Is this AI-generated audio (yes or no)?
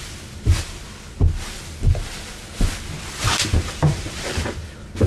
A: no